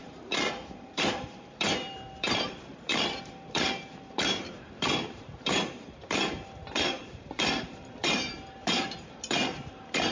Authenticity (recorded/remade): remade